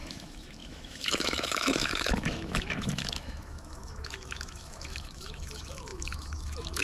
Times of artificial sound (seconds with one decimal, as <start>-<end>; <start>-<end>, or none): 0.0-6.8